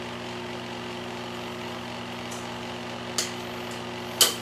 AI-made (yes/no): no